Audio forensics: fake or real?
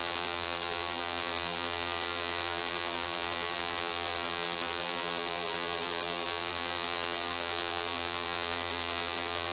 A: fake